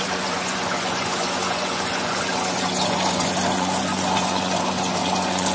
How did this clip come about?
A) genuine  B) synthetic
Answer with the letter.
B